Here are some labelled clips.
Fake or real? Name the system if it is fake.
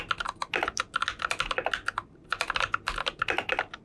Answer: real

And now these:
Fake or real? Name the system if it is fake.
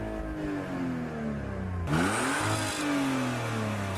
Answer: real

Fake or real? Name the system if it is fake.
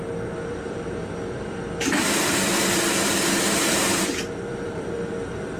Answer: fake, vocoder, BigVGAN v2